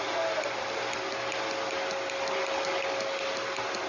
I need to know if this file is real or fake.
real